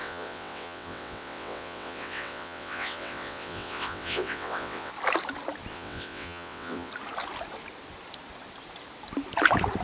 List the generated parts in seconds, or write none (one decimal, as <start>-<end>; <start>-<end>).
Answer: 0.0-4.9; 5.7-6.9